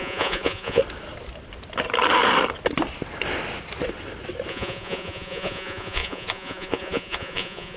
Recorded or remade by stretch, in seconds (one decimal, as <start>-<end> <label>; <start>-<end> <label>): 0.0-0.8 remade; 0.8-4.5 recorded; 4.5-7.8 remade